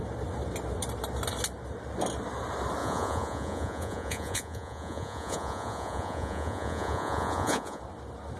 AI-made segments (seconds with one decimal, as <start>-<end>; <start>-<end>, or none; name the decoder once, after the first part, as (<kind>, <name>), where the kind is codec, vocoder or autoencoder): 2.8-7.8 (vocoder, Vocos)